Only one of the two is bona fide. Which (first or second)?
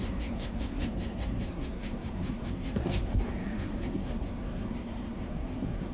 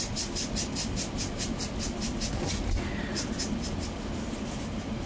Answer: second